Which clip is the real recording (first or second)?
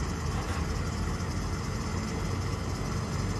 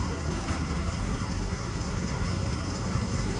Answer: first